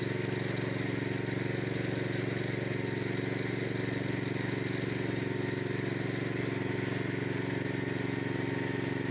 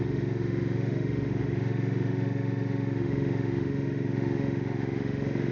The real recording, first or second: first